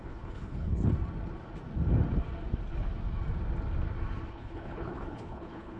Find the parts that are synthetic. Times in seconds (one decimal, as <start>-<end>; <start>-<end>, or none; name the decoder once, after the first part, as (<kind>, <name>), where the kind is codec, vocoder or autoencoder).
0.0-0.8 (codec, HILCodec); 4.3-5.8